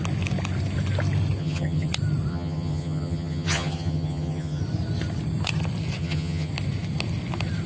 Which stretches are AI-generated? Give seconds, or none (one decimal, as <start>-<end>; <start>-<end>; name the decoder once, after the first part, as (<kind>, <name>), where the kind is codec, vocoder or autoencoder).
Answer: 1.4-1.9 (vocoder, HiFi-GAN); 2.3-4.6; 6.0-6.5